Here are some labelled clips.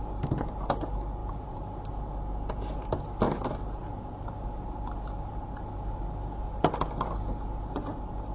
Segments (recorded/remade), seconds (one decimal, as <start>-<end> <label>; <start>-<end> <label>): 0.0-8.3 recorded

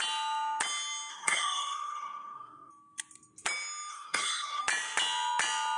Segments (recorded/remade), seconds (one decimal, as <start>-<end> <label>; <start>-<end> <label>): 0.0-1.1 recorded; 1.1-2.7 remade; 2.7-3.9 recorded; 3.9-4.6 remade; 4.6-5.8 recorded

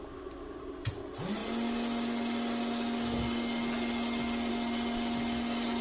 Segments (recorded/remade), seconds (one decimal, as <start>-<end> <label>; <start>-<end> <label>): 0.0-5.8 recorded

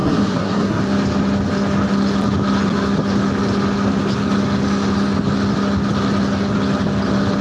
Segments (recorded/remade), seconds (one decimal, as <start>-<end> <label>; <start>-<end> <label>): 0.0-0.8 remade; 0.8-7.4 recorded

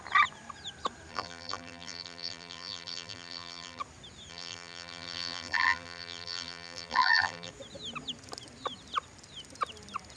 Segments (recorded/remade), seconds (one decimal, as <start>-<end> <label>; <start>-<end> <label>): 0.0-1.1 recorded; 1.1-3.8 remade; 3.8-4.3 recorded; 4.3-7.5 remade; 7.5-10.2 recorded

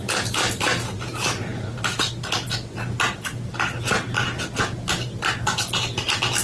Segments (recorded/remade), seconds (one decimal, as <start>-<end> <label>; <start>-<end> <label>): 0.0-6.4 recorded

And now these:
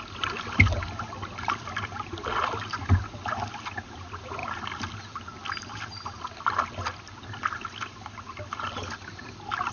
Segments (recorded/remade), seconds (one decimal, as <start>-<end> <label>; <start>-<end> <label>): 0.0-9.7 recorded